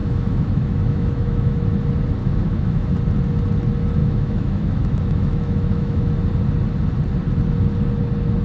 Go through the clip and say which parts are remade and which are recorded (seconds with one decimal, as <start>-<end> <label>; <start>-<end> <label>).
0.0-1.7 remade; 1.7-2.2 recorded; 2.2-2.9 remade; 2.9-4.0 recorded; 4.0-6.1 remade; 6.1-8.4 recorded